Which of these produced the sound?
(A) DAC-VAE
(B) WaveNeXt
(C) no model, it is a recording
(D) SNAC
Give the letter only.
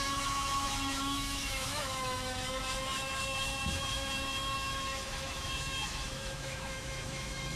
A